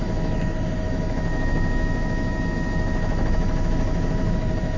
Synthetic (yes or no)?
yes